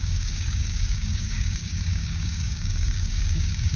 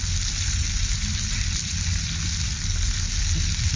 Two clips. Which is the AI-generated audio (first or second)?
first